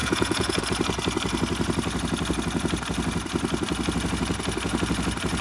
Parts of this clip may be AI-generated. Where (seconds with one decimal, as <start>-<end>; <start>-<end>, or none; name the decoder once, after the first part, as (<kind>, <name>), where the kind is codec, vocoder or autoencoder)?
0.0-0.6 (vocoder, Vocos)